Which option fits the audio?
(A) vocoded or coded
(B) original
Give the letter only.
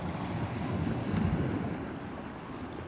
B